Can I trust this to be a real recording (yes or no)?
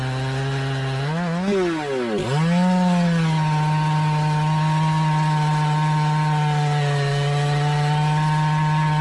yes